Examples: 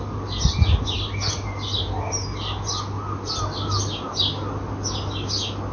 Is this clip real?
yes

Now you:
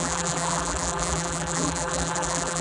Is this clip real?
no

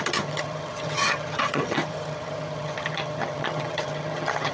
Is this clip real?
no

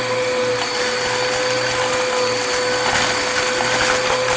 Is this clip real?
yes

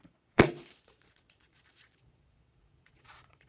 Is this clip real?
no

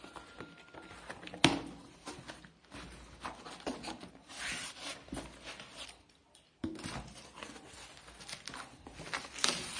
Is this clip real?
yes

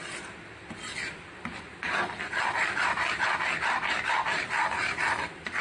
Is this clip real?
yes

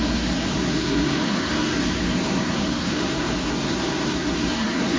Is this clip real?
no